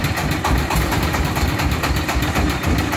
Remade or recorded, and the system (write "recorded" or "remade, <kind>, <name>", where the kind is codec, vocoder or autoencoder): recorded